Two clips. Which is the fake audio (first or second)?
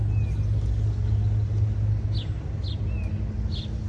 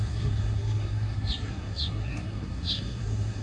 second